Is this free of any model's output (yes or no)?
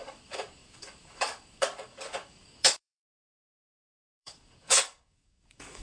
no